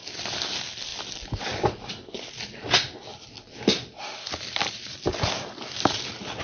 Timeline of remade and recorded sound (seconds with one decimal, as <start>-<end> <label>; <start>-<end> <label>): 0.0-0.5 remade; 0.5-0.9 recorded; 0.9-1.9 remade; 1.9-3.1 recorded; 3.1-6.4 remade